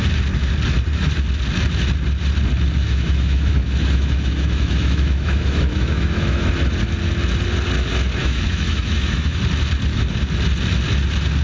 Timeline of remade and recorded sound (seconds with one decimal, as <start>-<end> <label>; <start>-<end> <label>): 0.0-2.8 recorded; 2.8-6.5 remade; 6.5-8.2 recorded; 8.2-9.4 remade; 9.4-11.4 recorded